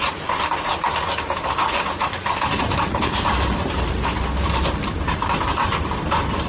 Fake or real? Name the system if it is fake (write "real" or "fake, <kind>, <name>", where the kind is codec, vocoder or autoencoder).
fake, vocoder, BigVGAN v2